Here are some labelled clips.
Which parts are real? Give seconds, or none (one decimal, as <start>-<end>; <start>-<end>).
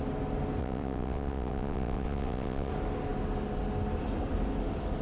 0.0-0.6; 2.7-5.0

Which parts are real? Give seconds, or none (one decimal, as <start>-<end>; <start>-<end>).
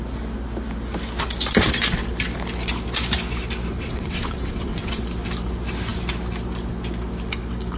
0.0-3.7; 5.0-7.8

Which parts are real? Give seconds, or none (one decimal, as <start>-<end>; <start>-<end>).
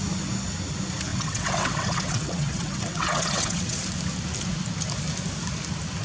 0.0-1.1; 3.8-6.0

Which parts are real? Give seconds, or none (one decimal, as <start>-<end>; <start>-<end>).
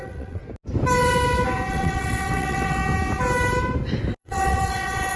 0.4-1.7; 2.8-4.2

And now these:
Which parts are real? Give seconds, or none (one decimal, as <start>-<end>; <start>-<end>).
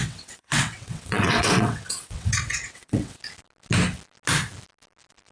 3.2-5.3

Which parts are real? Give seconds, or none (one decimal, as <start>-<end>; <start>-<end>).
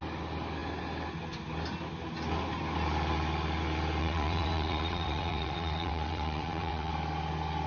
0.0-4.0; 6.9-7.7